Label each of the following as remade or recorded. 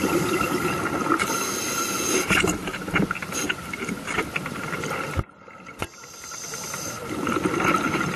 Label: recorded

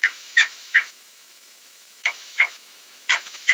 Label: remade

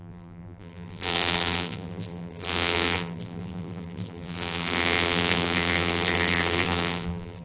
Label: remade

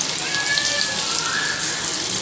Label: recorded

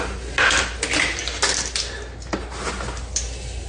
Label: recorded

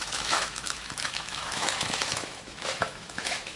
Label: remade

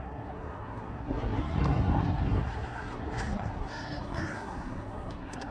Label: remade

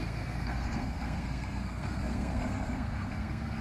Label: remade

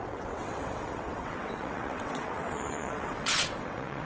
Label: remade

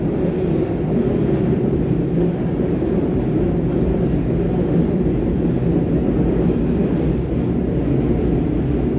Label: recorded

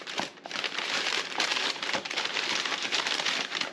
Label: remade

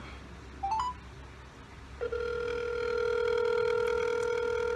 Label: recorded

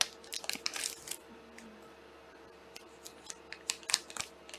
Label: recorded